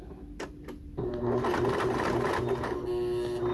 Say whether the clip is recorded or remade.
recorded